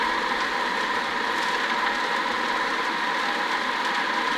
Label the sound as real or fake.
real